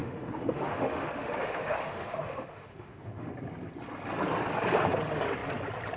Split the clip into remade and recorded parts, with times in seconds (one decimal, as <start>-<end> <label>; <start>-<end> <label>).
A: 0.0-3.3 remade; 3.3-6.0 recorded